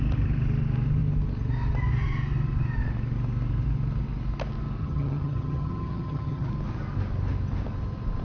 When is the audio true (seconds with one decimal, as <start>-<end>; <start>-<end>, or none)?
0.0-4.8; 6.5-8.2